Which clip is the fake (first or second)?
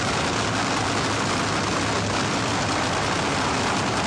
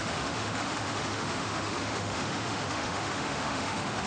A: second